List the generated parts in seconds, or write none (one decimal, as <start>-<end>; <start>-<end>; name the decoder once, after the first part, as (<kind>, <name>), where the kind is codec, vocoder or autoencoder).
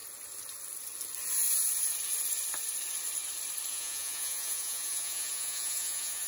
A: 3.7-6.3 (vocoder, Vocos)